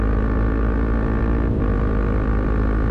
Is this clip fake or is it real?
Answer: real